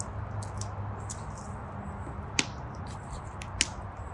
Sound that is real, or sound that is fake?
real